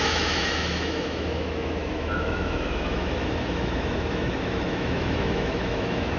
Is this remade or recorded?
remade